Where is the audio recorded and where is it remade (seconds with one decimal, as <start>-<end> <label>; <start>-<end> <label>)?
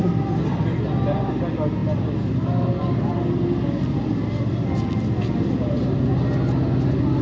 0.0-7.2 recorded